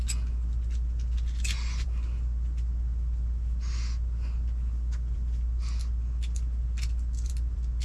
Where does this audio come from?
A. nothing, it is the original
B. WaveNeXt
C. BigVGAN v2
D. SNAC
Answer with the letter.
A